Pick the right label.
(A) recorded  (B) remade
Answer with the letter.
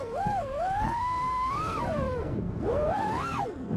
B